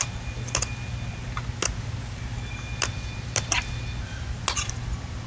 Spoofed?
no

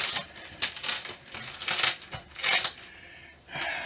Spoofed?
no